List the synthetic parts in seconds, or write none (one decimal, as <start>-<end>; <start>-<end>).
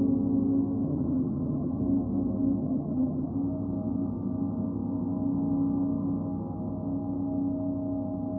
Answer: 0.9-1.8; 2.6-3.3